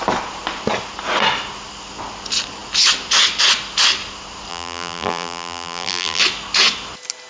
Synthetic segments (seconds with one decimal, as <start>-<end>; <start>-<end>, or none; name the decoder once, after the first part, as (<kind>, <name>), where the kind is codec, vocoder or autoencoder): 4.5-6.2 (vocoder, BigVGAN v2)